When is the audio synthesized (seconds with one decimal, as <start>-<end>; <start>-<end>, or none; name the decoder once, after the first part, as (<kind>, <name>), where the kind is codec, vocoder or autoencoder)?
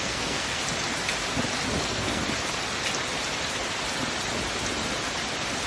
0.0-0.6 (codec, SNAC); 1.8-2.2